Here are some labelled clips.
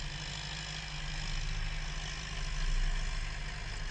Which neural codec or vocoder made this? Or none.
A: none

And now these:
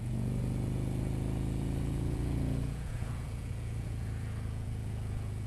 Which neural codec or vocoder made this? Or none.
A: vocoder, Vocos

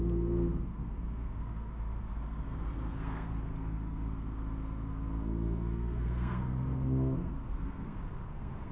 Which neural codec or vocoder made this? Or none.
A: codec, SNAC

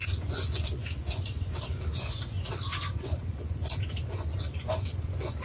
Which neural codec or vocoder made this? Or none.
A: vocoder, Vocos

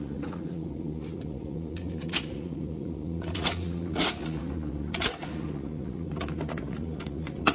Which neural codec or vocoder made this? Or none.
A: vocoder, Vocos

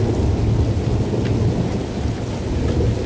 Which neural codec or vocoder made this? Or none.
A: none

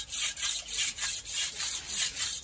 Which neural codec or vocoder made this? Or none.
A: none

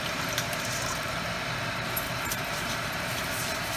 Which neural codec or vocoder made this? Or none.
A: vocoder, BigVGAN v2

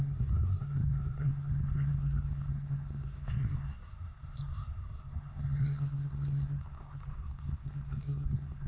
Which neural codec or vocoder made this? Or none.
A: codec, SNAC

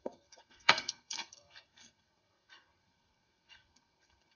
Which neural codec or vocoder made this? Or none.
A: codec, SNAC